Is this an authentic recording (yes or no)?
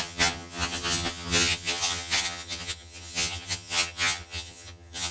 no